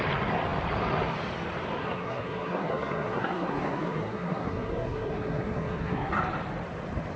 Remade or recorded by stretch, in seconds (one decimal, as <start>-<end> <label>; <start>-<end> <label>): 0.0-1.8 recorded; 1.8-6.1 remade; 6.1-7.2 recorded